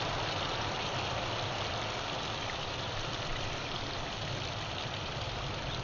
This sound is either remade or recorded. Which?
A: recorded